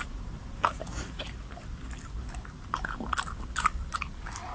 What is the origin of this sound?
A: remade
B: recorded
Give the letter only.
B